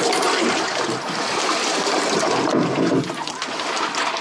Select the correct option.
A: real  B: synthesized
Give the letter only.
A